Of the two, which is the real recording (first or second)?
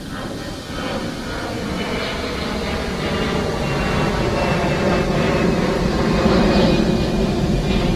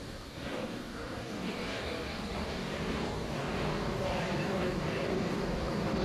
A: first